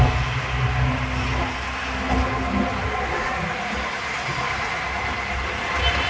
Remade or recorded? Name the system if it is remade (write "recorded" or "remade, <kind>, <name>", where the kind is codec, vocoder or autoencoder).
recorded